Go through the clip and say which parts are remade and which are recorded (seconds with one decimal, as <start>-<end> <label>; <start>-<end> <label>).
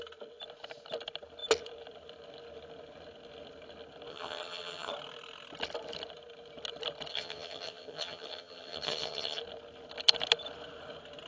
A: 0.0-4.1 recorded; 4.1-4.9 remade; 4.9-7.1 recorded; 7.1-9.4 remade; 9.4-11.3 recorded